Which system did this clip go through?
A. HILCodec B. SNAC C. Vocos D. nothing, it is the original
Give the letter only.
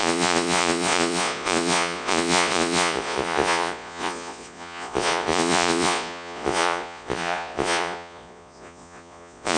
C